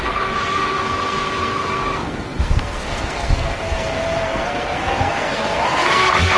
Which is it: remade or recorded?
remade